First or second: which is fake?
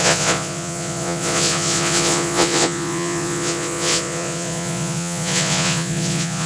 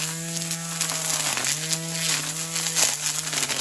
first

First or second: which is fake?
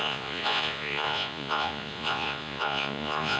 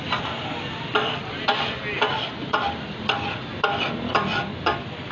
first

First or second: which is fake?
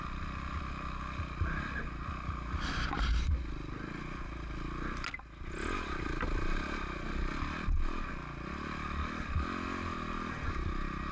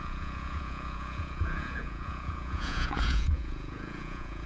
second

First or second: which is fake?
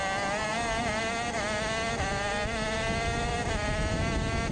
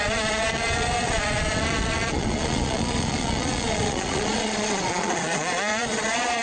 second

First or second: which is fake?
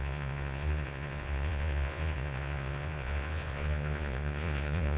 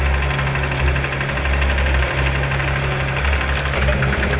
first